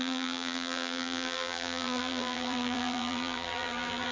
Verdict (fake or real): fake